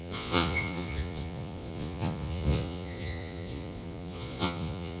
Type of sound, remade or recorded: remade